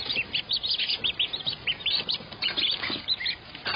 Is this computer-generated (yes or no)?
yes